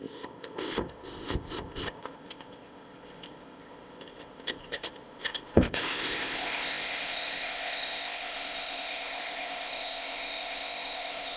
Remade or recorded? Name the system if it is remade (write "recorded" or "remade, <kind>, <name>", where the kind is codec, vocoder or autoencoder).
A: remade, codec, ZipCodec